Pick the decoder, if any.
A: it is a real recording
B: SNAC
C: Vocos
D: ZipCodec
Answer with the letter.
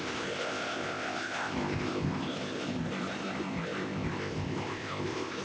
D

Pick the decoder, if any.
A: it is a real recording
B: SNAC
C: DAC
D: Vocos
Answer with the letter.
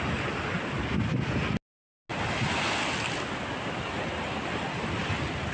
A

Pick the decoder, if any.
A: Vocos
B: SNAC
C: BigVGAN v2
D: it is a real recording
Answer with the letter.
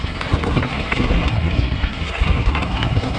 B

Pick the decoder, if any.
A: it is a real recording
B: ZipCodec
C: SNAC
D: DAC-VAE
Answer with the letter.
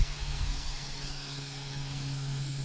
C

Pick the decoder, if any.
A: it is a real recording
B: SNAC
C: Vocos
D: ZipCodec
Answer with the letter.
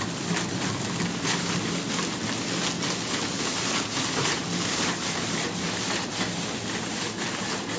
A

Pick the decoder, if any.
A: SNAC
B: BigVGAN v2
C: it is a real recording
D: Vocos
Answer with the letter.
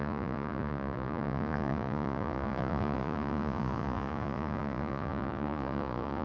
D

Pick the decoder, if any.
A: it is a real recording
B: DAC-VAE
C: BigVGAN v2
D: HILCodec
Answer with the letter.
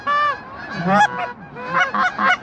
A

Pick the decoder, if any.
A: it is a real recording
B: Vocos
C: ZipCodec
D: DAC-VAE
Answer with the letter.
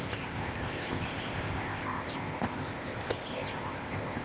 C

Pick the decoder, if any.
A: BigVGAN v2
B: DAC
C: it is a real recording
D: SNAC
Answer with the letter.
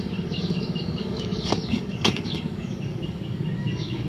B